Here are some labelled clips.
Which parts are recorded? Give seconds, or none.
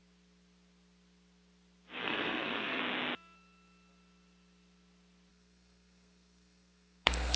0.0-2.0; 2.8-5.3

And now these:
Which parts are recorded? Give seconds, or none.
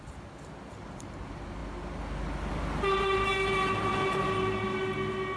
0.0-5.4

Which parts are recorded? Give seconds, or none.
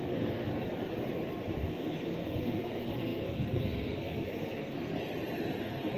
0.5-1.6; 5.0-5.6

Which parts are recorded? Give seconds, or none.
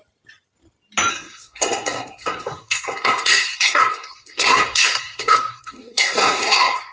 0.0-1.1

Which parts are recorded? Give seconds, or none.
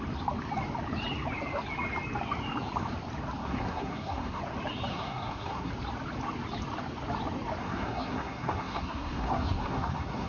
0.0-3.4; 4.4-4.9; 5.7-7.6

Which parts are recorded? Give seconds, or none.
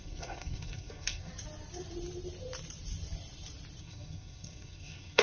1.3-3.8